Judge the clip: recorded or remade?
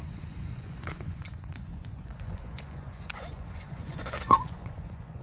remade